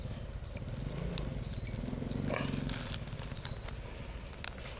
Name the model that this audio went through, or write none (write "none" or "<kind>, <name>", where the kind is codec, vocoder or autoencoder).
none